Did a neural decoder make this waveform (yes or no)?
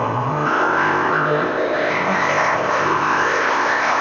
yes